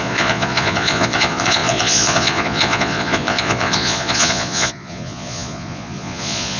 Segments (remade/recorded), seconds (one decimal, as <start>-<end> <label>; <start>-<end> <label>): 0.0-6.6 remade